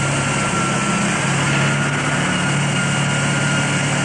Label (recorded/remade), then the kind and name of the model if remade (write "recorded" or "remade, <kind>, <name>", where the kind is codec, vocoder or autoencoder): recorded